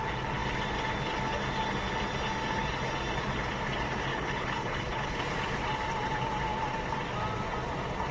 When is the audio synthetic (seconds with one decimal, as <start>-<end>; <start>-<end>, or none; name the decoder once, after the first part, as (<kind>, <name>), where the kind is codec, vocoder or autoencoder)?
4.1-5.2 (codec, HILCodec)